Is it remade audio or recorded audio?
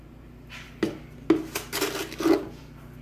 recorded